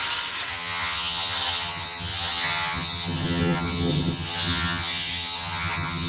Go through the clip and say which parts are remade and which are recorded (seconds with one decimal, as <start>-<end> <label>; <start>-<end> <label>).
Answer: 0.0-0.5 recorded; 0.5-6.1 remade